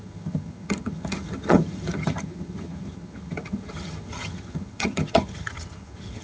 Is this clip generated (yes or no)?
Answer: yes